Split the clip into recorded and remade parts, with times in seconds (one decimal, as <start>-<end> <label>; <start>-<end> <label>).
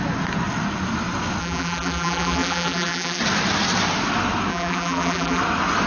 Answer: 0.0-1.4 recorded; 1.4-3.2 remade; 3.2-4.5 recorded; 4.5-5.4 remade; 5.4-5.9 recorded